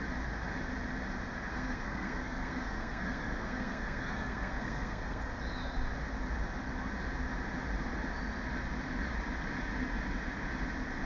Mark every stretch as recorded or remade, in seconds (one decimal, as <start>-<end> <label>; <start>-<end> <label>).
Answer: 0.0-1.5 recorded; 1.5-5.2 remade; 5.2-11.1 recorded